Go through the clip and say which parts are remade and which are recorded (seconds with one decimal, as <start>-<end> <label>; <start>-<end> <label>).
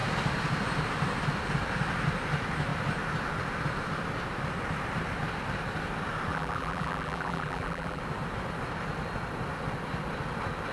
0.0-6.3 recorded; 6.3-8.0 remade; 8.0-10.7 recorded